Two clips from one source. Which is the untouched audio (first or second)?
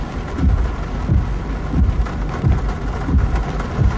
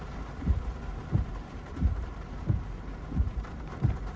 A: first